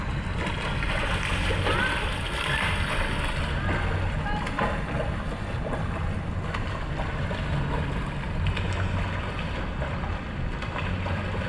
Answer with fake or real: real